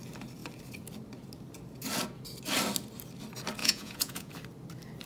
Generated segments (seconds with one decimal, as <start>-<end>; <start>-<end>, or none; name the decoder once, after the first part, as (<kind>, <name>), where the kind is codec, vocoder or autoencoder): 3.6-4.3 (vocoder, Vocos)